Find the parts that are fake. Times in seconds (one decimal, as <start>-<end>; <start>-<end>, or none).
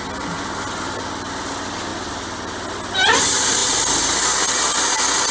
none